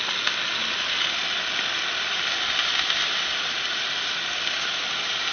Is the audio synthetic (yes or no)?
no